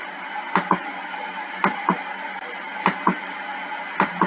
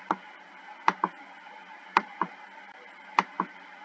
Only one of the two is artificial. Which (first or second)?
second